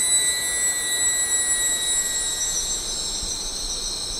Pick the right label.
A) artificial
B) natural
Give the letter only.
B